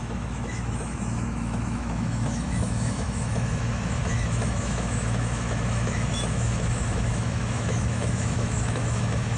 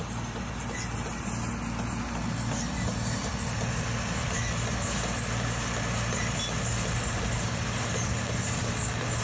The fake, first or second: first